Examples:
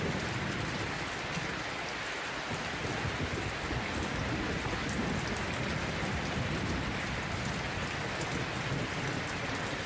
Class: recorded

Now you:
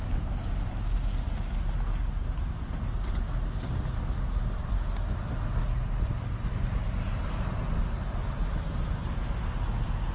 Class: recorded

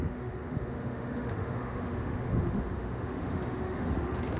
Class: remade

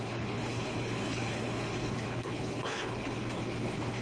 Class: remade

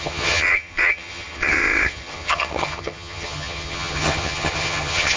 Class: remade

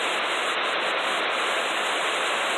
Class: recorded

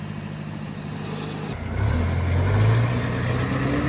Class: recorded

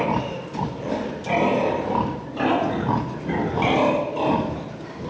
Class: recorded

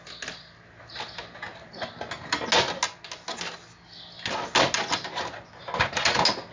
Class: recorded